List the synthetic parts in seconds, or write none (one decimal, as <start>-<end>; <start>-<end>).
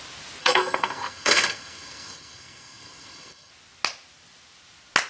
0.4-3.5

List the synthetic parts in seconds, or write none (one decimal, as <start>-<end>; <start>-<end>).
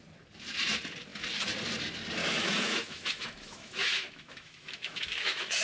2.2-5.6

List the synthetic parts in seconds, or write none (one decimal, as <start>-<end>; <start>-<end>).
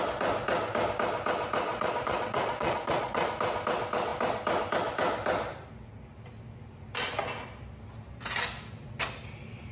1.7-3.3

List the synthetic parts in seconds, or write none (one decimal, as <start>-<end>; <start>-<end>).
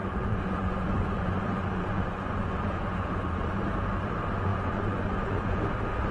0.0-3.7; 4.5-5.6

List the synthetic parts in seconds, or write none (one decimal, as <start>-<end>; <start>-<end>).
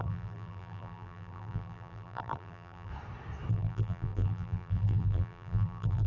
0.0-2.9; 3.5-6.1